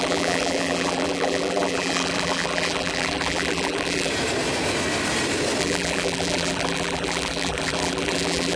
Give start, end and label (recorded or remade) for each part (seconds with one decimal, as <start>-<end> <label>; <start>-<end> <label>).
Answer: 0.0-4.1 remade; 4.1-5.6 recorded; 5.6-8.6 remade